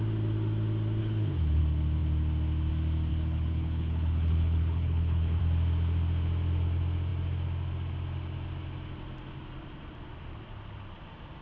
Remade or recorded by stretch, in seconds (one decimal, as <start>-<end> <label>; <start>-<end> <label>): 0.0-1.0 recorded; 1.0-1.6 remade; 1.6-3.1 recorded; 3.1-5.4 remade; 5.4-11.4 recorded